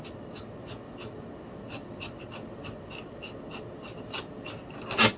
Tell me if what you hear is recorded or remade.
recorded